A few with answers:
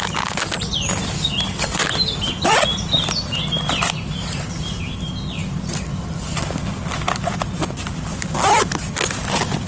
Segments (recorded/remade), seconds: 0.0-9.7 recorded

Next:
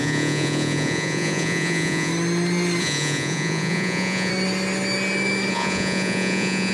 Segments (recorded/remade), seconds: 0.0-2.1 remade; 2.1-2.8 recorded; 2.8-4.3 remade; 4.3-5.5 recorded; 5.5-6.7 remade

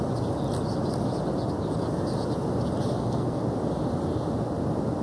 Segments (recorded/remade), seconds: 0.0-2.9 recorded; 2.9-3.4 remade; 3.4-5.0 recorded

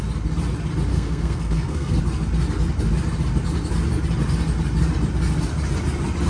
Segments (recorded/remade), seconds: 0.0-0.9 recorded; 0.9-2.0 remade; 2.0-6.3 recorded

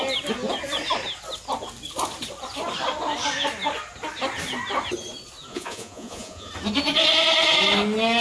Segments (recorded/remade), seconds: 0.0-5.5 recorded; 5.5-6.5 remade; 6.5-8.2 recorded

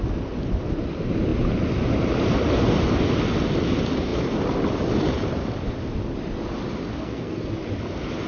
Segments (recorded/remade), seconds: 0.0-6.9 recorded; 6.9-7.5 remade; 7.5-8.3 recorded